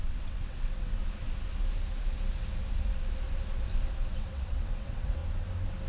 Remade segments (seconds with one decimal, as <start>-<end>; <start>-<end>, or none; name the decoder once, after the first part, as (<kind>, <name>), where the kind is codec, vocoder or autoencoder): 0.0-1.0 (vocoder, WaveNeXt); 4.1-5.2